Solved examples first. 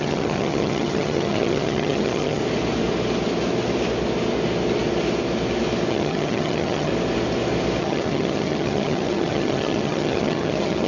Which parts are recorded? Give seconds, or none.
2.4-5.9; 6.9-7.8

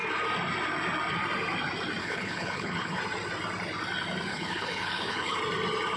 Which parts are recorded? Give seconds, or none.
0.0-2.0; 3.0-4.3; 5.4-6.0